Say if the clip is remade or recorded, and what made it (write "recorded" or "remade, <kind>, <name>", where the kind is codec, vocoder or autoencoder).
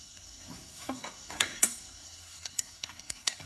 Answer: remade, codec, SNAC